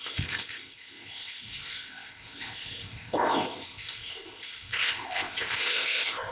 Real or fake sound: fake